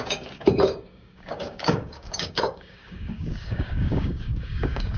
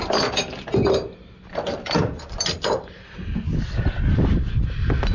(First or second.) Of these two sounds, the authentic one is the second